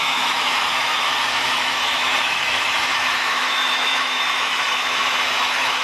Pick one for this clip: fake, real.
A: fake